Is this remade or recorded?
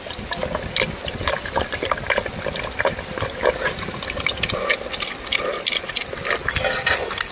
recorded